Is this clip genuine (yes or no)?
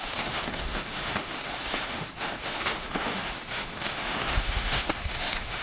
no